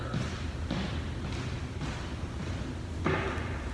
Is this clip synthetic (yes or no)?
no